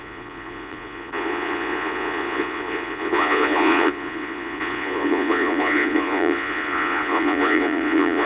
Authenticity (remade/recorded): remade